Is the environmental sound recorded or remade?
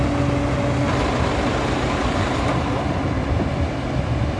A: recorded